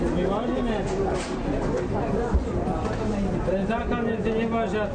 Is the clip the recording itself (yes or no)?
yes